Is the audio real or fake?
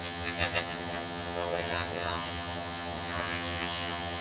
fake